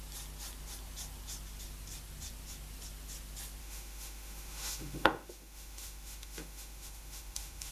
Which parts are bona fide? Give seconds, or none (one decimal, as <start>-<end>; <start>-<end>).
0.0-3.6